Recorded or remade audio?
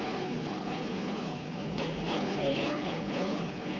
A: remade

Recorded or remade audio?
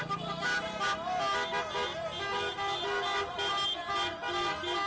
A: recorded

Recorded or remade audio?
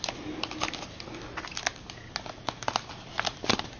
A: recorded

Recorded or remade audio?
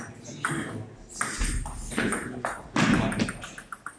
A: recorded